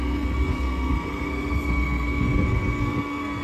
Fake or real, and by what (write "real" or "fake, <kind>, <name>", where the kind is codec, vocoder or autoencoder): fake, codec, SNAC